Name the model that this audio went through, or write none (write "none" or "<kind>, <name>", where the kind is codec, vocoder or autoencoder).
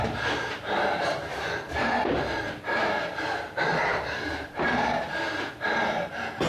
vocoder, BigVGAN v2